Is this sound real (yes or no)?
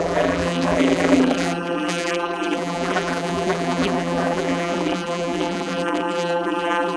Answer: no